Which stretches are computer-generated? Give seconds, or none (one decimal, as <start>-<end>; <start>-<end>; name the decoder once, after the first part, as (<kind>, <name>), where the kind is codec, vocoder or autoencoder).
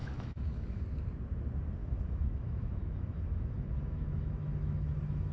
0.0-0.8 (autoencoder, DAC-VAE); 1.8-5.3